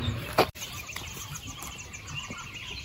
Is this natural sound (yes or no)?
yes